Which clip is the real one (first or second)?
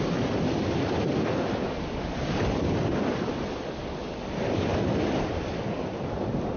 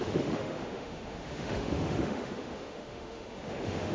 first